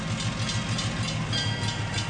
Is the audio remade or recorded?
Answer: recorded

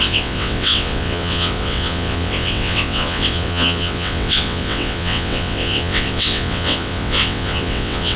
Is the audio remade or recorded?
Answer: remade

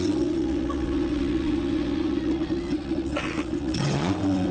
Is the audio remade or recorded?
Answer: remade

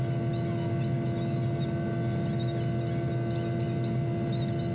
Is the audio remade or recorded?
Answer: recorded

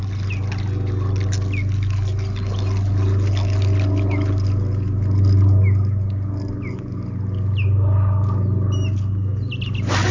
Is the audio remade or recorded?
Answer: recorded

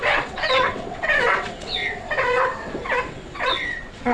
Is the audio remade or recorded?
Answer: remade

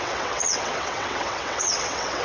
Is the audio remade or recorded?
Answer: remade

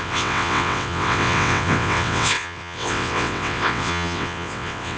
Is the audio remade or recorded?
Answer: remade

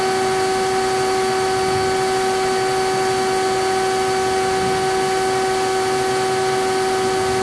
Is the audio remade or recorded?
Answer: recorded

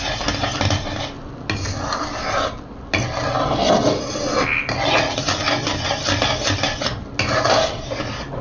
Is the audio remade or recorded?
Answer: recorded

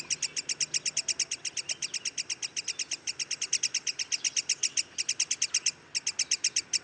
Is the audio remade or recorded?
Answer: recorded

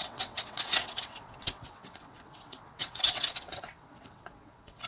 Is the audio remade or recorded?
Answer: remade